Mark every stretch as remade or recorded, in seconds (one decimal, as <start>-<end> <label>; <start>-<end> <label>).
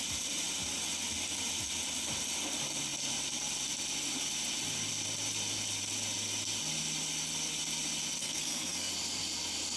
0.0-8.2 recorded; 8.2-8.9 remade; 8.9-9.8 recorded